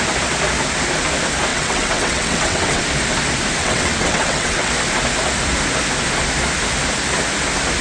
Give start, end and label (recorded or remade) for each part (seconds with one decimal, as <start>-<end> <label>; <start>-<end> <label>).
0.0-1.5 recorded; 1.5-2.8 remade; 2.8-3.6 recorded; 3.6-4.7 remade; 4.7-7.8 recorded